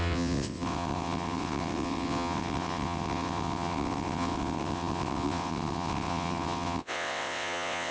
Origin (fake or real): fake